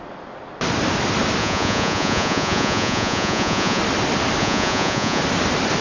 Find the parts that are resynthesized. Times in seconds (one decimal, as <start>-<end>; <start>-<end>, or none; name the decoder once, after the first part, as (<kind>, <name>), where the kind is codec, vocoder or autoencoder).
1.4-3.8 (vocoder, Vocos); 4.4-5.2